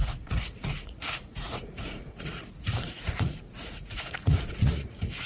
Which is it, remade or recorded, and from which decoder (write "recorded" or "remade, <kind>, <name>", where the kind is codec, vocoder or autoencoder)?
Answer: remade, vocoder, Vocos